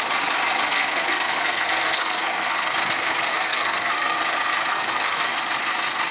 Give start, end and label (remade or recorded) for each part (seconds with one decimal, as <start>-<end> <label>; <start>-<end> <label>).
0.0-0.7 recorded; 0.7-2.7 remade; 2.7-3.3 recorded; 3.3-4.2 remade; 4.2-4.7 recorded; 4.7-5.4 remade; 5.4-6.1 recorded